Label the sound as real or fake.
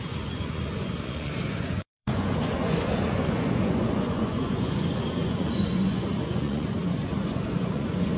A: fake